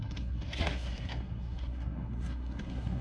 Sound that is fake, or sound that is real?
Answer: fake